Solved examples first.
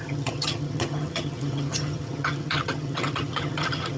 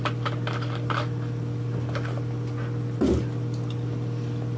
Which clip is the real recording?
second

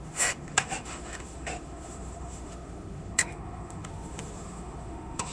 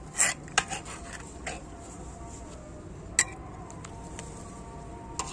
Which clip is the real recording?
second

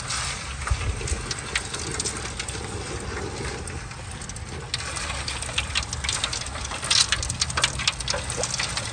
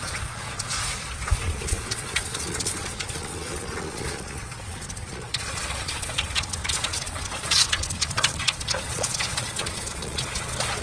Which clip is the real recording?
first